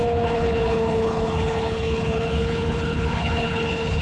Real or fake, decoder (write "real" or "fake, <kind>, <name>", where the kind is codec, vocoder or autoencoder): fake, codec, HILCodec